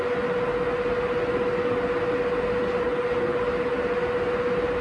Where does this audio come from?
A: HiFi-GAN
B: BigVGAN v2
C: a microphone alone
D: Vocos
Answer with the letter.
C